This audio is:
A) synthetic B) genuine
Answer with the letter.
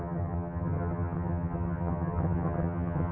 A